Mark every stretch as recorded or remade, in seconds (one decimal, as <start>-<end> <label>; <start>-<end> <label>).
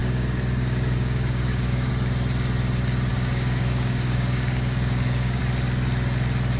0.0-1.9 remade; 1.9-3.1 recorded; 3.1-5.4 remade; 5.4-6.6 recorded